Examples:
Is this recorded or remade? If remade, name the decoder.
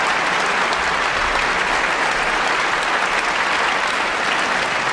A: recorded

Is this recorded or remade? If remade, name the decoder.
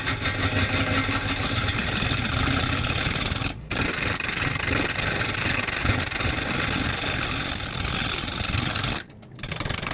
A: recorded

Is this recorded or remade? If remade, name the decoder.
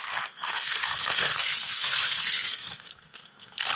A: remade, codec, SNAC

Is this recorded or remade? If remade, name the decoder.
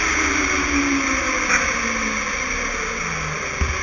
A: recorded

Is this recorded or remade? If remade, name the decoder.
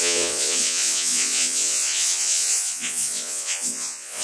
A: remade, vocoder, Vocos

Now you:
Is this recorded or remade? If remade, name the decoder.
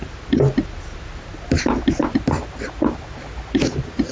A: recorded